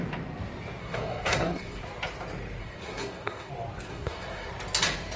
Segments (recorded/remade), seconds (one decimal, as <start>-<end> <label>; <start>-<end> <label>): 0.0-0.8 recorded; 0.8-1.8 remade; 1.8-2.6 recorded; 2.6-3.5 remade; 3.5-3.9 recorded; 3.9-4.5 remade; 4.5-5.2 recorded